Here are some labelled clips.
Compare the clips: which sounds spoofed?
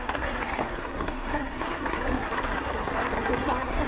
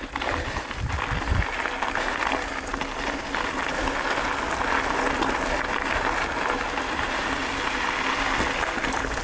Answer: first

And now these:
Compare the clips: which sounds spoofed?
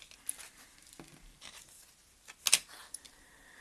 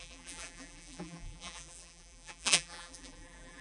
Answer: second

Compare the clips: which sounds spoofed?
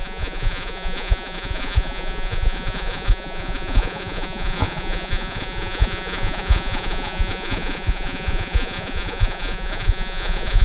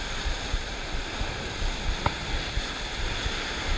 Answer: first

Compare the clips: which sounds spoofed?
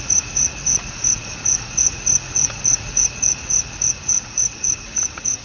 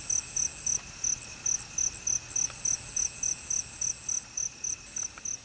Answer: first